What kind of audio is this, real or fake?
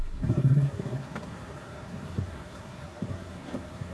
fake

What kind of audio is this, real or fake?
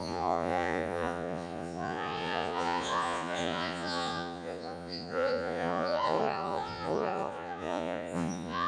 fake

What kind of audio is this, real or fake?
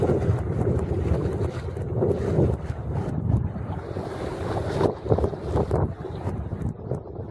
real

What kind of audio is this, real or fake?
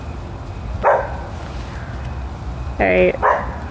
real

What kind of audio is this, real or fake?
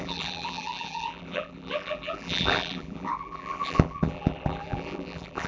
fake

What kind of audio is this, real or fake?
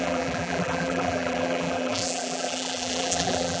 fake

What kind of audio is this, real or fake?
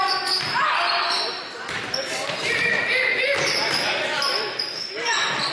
fake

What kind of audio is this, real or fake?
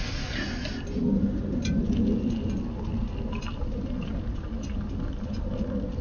real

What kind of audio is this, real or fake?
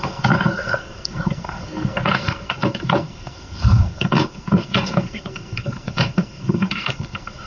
fake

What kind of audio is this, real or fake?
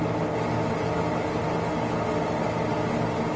real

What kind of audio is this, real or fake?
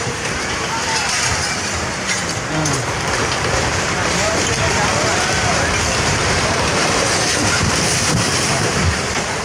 fake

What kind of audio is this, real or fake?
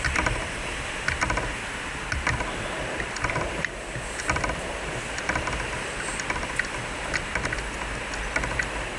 fake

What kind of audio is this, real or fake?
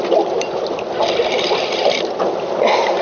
real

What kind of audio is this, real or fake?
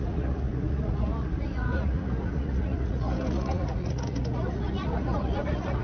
fake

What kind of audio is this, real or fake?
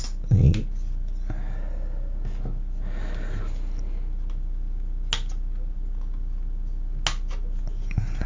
real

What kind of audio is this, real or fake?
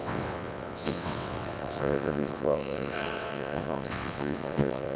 fake